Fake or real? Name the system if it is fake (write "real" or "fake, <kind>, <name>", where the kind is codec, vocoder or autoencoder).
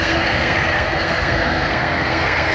fake, codec, SNAC